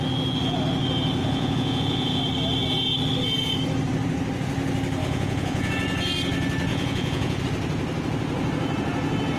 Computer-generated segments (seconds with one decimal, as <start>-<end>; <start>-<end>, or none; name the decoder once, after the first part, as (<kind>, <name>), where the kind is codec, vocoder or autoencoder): 1.2-2.2 (vocoder, Vocos); 5.0-5.7; 6.7-7.4